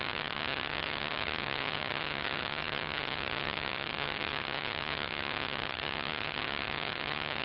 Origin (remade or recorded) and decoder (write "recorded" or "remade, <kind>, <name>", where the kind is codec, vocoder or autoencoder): remade, vocoder, HiFi-GAN